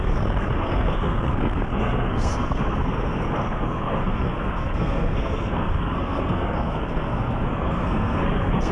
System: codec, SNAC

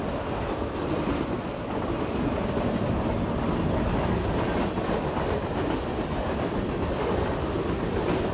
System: none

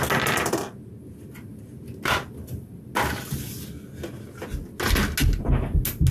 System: none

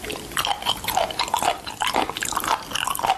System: none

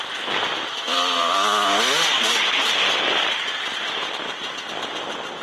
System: none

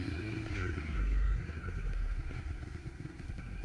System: codec, SNAC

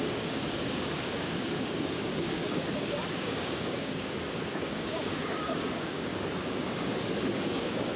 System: codec, DAC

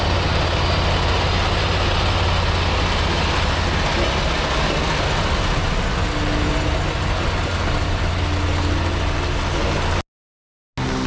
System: none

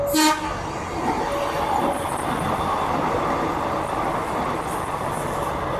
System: none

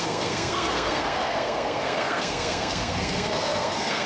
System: codec, SNAC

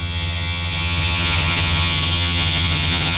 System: vocoder, HiFi-GAN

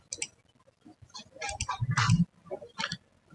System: none